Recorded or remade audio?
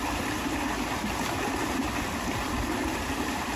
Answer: recorded